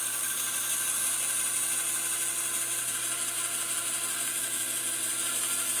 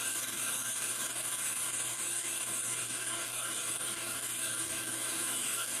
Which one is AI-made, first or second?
second